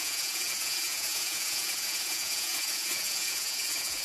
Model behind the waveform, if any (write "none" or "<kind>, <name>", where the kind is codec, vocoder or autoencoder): vocoder, Vocos